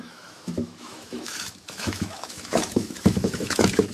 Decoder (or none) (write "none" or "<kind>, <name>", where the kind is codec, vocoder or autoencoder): autoencoder, DAC-VAE